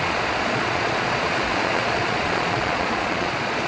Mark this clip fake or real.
fake